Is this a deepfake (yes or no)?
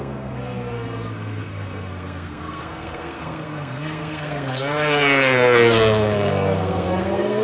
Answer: yes